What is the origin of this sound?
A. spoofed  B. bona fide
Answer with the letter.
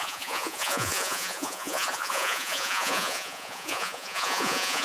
A